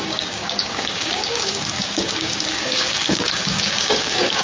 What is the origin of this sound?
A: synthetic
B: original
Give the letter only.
A